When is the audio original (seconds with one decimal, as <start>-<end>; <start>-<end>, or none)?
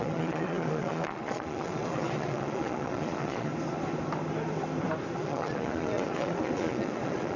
3.5-5.2